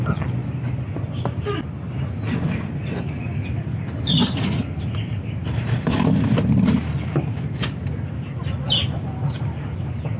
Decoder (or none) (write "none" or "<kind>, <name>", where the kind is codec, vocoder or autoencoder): none